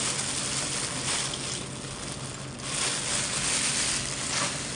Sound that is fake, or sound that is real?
real